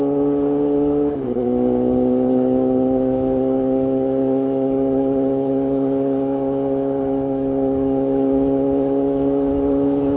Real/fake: fake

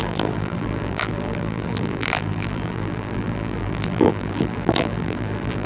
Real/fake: fake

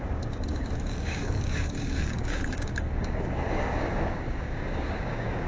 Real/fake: fake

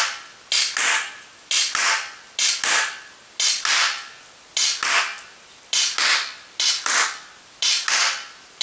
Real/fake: real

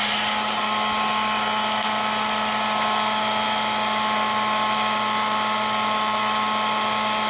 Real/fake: real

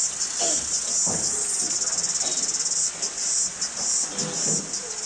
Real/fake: real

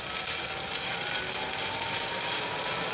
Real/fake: real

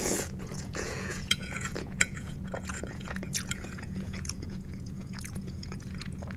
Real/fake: fake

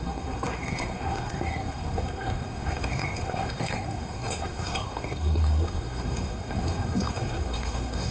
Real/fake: fake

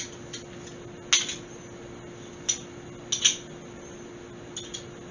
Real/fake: real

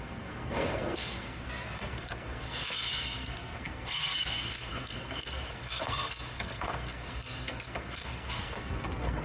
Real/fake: fake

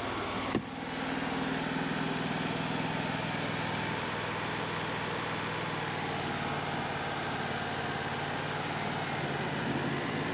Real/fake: real